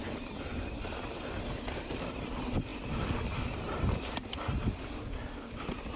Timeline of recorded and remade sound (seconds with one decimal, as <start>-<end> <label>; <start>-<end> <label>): 0.0-6.0 recorded